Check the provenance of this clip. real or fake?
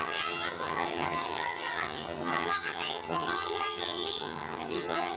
fake